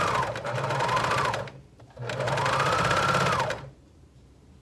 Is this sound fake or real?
real